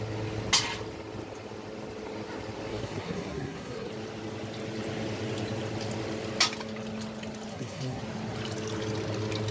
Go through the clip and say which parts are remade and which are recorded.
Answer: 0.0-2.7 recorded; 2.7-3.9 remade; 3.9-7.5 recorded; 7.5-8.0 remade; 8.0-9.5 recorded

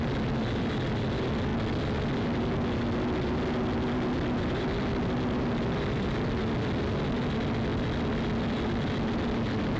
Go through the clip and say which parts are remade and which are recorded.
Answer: 0.0-9.8 recorded

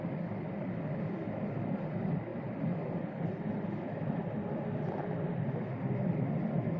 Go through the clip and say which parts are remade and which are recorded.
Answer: 0.0-6.8 recorded